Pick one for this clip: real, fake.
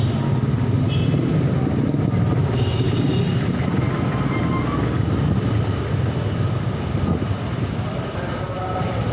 real